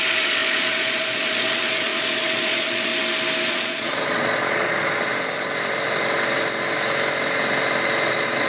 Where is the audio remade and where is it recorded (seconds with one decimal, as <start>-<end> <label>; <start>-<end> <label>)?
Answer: 0.0-2.9 remade; 2.9-3.5 recorded; 3.5-5.1 remade; 5.1-8.1 recorded; 8.1-8.5 remade